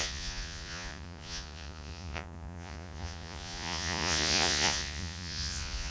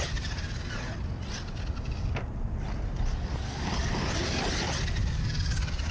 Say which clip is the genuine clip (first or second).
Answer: second